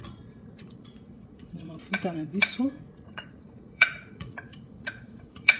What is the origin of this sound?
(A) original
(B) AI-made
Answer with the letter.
B